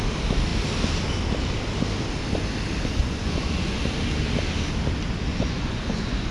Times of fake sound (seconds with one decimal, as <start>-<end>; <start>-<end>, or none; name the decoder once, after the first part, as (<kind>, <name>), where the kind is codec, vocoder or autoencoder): 3.0-3.8 (vocoder, Vocos); 5.3-6.3